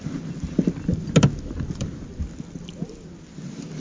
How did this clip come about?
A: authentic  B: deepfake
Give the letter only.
A